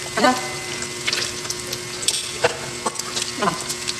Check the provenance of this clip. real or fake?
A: real